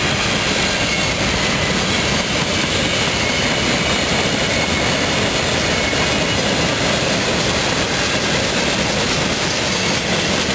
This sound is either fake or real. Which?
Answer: real